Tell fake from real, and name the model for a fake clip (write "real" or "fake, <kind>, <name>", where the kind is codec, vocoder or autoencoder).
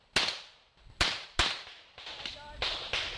real